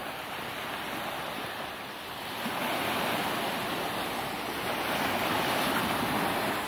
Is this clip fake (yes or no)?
no